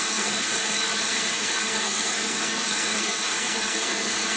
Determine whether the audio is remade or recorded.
remade